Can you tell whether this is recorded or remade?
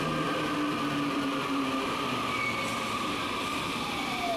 remade